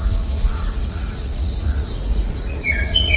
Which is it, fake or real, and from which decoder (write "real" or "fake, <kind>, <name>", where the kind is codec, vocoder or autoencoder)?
fake, vocoder, Vocos